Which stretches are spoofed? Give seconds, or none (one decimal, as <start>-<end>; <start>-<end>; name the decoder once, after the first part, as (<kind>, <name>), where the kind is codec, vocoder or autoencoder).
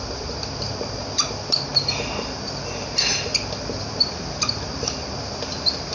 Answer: none